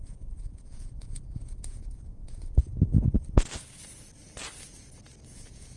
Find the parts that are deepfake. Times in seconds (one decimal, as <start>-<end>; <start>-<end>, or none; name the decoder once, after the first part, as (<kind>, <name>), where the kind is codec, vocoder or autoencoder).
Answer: 0.0-2.6 (vocoder, Vocos); 5.3-5.8